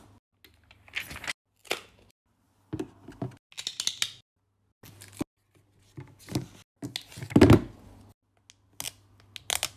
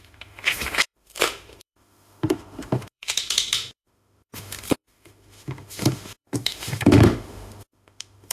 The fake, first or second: second